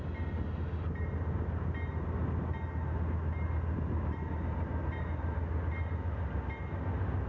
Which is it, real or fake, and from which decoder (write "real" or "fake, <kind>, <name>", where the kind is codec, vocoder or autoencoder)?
real